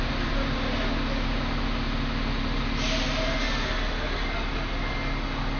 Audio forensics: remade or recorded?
recorded